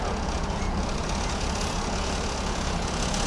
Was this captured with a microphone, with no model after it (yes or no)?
no